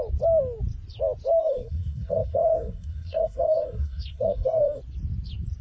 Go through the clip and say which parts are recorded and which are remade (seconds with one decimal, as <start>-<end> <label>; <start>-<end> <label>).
0.0-1.4 recorded; 1.4-4.8 remade; 4.8-5.6 recorded